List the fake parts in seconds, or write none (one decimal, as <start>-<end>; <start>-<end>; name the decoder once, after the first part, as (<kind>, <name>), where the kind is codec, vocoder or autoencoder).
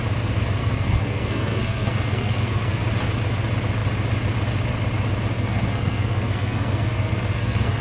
0.6-2.9 (codec, SNAC); 5.3-7.8